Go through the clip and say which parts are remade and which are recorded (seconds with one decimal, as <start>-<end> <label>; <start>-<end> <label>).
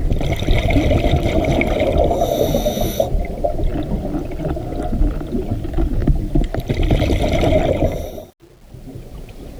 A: 0.0-6.0 recorded; 6.0-7.6 remade; 7.6-9.6 recorded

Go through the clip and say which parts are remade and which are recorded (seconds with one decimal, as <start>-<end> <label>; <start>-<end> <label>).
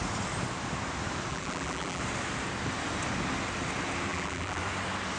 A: 0.0-1.3 recorded; 1.3-2.0 remade; 2.0-4.1 recorded; 4.1-4.6 remade; 4.6-5.2 recorded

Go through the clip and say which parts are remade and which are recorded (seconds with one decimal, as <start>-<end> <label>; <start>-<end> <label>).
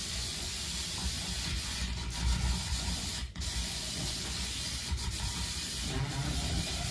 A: 0.0-0.6 remade; 0.6-1.0 recorded; 1.0-5.1 remade; 5.1-6.9 recorded